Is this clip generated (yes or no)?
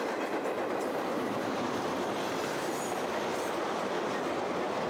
no